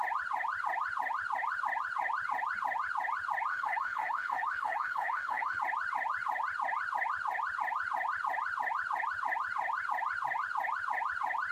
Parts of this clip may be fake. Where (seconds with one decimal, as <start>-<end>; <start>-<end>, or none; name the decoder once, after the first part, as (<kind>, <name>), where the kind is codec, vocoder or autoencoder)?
3.5-5.6 (autoencoder, DAC-VAE)